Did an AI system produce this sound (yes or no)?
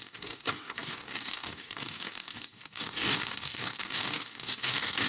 yes